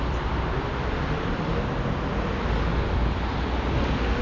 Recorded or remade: recorded